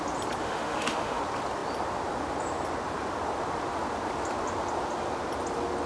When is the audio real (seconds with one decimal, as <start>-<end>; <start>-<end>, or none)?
0.0-0.4; 1.2-5.9